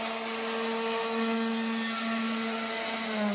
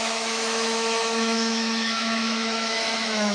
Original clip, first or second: first